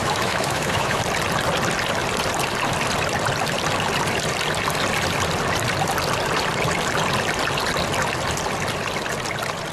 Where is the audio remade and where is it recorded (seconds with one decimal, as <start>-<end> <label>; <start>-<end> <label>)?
0.0-1.0 remade; 1.0-9.7 recorded